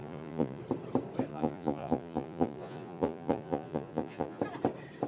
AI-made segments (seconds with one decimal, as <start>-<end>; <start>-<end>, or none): 0.0-0.6; 1.3-4.4